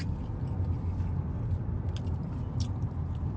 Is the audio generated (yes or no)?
no